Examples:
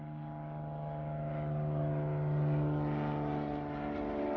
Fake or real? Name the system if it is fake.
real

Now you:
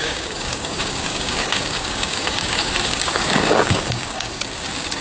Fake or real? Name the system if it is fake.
fake, codec, DAC